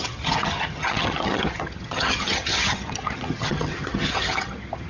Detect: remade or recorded remade